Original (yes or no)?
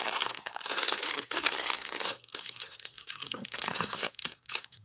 no